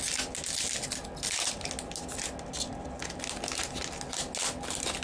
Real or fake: real